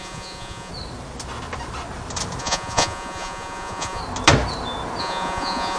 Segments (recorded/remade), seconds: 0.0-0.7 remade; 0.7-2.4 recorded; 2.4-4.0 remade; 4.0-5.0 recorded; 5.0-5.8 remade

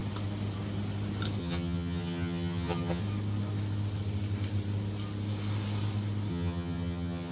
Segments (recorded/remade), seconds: 0.0-1.4 recorded; 1.4-3.0 remade; 3.0-6.3 recorded; 6.3-7.3 remade

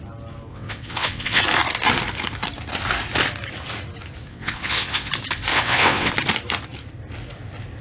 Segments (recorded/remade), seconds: 0.0-0.5 recorded; 0.5-1.4 remade; 1.4-4.3 recorded; 4.3-5.1 remade; 5.1-5.5 recorded; 5.5-6.1 remade; 6.1-7.8 recorded

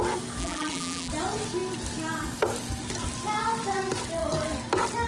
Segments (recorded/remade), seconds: 0.0-0.4 recorded; 0.4-1.1 remade; 1.1-5.1 recorded

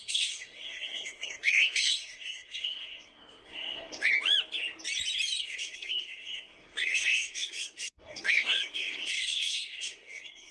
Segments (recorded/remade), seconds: 0.0-4.1 remade; 4.1-5.4 recorded; 5.4-10.5 remade

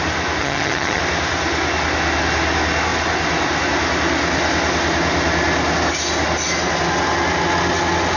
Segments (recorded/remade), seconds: 0.0-0.4 recorded; 0.4-1.0 remade; 1.0-8.2 recorded